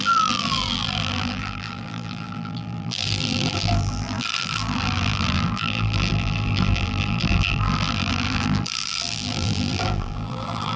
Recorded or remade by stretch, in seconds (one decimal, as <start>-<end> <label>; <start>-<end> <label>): 0.0-10.8 remade